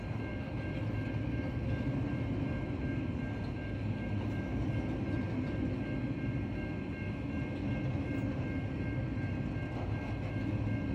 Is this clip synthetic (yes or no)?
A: no